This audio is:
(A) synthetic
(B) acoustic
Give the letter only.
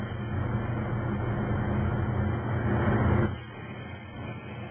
B